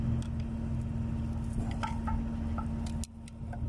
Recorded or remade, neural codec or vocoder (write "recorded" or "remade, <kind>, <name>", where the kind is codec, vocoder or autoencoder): recorded